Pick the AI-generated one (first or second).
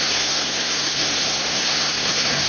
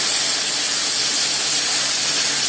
first